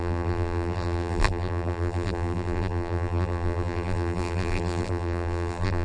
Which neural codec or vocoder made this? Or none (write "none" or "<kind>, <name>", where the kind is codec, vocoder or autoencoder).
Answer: vocoder, BigVGAN v2